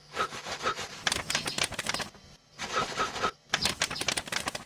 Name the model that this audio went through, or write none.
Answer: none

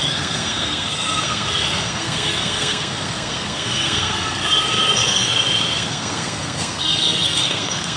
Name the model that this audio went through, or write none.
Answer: codec, SNAC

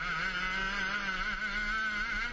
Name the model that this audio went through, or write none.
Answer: none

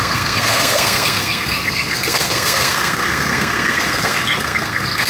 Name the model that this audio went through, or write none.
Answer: codec, SNAC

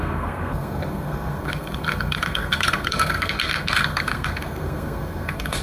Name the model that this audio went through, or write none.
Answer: codec, SNAC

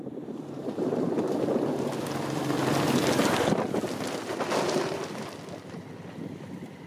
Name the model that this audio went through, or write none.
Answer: none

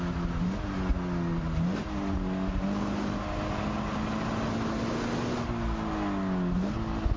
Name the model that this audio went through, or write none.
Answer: none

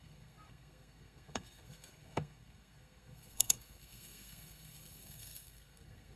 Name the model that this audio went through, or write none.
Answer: codec, SNAC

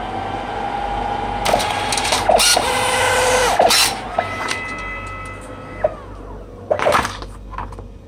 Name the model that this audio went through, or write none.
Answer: none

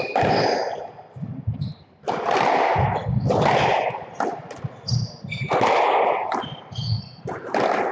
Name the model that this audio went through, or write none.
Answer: none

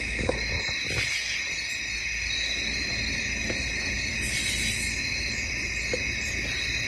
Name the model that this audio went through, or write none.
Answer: none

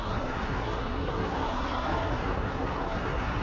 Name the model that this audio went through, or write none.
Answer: codec, SNAC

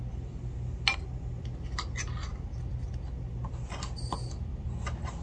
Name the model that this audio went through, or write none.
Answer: none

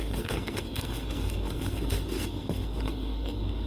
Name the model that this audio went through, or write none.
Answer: codec, SNAC